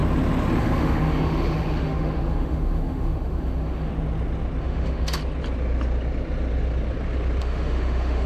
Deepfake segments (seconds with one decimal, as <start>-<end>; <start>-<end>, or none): 0.6-3.9; 4.6-5.2; 7.4-8.3